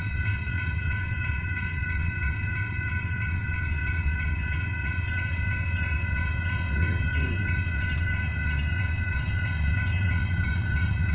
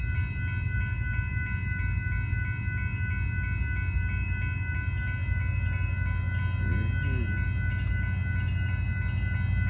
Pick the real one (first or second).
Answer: second